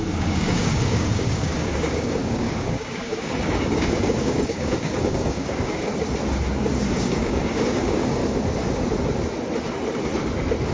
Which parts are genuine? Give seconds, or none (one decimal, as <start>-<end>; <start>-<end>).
5.9-6.9; 8.2-10.7